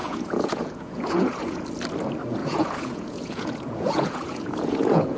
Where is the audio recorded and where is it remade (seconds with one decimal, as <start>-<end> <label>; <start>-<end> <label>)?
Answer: 0.0-1.6 remade; 1.6-2.4 recorded; 2.4-5.2 remade